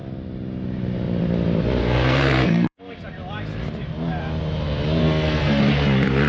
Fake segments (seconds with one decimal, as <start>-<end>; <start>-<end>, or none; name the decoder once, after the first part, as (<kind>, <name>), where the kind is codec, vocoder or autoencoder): 1.8-2.8 (codec, SNAC); 5.0-5.6